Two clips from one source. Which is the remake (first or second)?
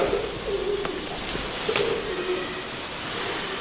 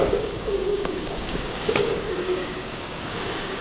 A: second